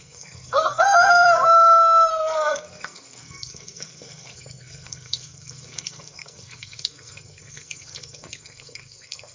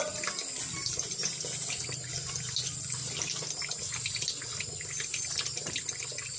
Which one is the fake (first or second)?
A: first